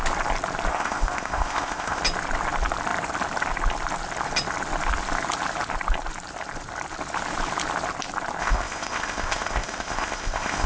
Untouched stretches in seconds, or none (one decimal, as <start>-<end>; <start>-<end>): 0.0-0.7; 2.0-8.4